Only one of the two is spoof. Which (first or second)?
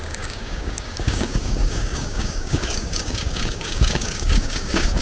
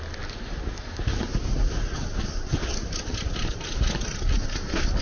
first